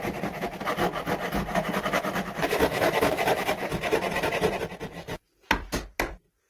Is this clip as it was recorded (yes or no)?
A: yes